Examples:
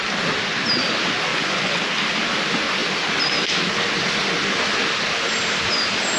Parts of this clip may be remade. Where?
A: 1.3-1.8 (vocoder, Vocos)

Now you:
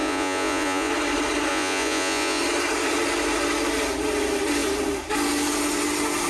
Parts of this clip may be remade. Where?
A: 0.0-0.9 (vocoder, Vocos); 1.5-2.4